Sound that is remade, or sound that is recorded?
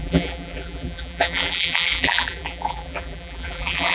remade